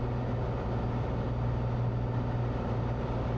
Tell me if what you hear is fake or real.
real